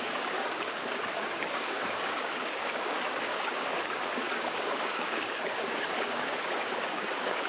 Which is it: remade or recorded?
remade